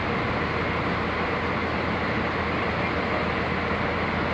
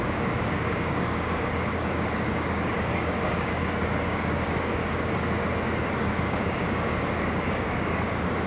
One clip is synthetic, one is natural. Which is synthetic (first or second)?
second